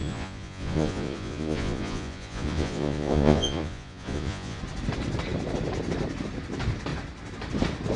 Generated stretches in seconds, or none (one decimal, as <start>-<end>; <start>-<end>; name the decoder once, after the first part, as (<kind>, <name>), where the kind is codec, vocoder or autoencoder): 0.0-4.6 (vocoder, Vocos)